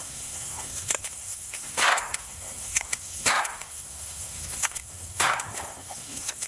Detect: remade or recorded remade